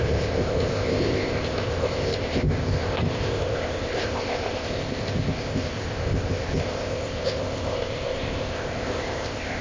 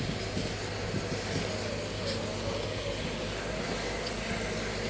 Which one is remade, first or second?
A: first